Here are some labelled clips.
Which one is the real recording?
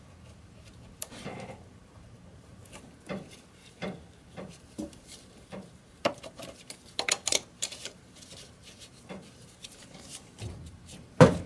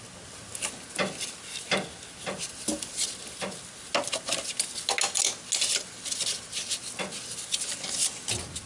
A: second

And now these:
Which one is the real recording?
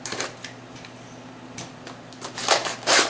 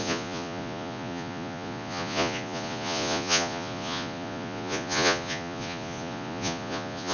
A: first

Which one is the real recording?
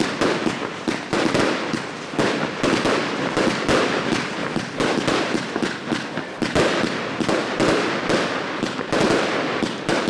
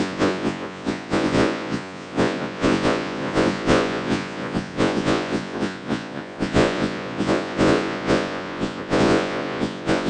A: first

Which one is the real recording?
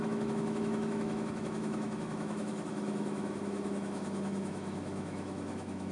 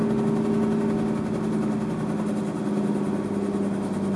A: second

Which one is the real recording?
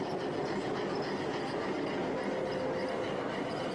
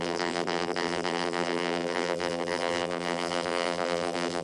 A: first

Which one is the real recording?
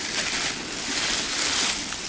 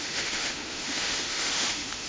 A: first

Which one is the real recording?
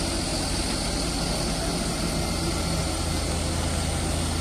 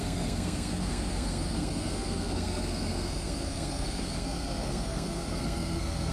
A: first